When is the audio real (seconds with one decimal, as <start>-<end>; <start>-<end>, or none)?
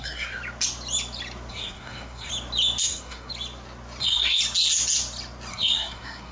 0.4-1.5; 2.3-2.8; 3.3-4.0; 4.4-5.5